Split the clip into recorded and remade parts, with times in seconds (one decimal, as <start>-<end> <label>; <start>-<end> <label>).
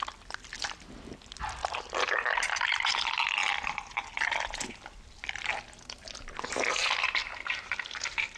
0.0-1.6 recorded; 1.6-3.0 remade; 3.0-7.2 recorded; 7.2-8.4 remade